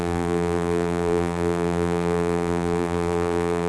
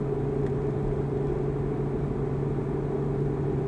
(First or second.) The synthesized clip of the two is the first